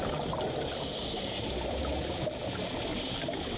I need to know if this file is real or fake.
real